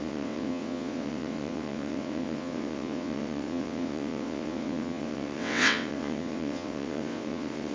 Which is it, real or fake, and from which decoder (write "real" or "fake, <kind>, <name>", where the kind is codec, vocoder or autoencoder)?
fake, vocoder, WaveNeXt